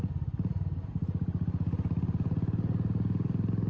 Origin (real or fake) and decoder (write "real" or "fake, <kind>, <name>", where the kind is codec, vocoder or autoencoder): real